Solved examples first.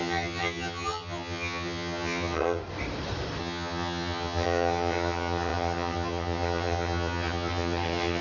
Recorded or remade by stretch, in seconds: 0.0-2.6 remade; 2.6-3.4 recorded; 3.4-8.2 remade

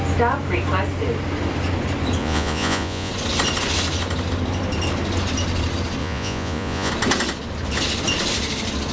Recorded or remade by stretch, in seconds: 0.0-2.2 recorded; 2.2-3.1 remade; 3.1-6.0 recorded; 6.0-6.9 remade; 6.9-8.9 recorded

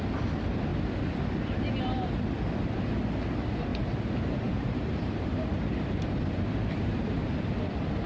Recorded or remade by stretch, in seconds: 0.0-3.7 recorded; 3.7-7.5 remade; 7.5-8.1 recorded

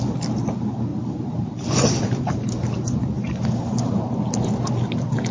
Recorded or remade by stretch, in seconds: 0.0-0.9 recorded; 0.9-4.1 remade; 4.1-5.3 recorded

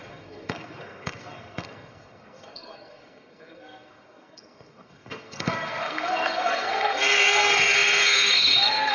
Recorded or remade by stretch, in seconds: 0.0-8.9 remade